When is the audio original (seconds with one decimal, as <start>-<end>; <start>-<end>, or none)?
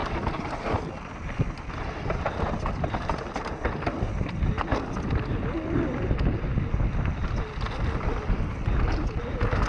0.0-9.7